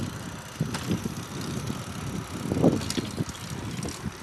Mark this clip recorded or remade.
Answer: recorded